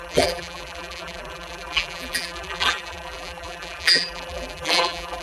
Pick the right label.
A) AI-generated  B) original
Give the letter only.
A